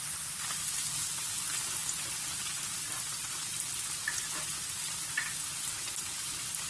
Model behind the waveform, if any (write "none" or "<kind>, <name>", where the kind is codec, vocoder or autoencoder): none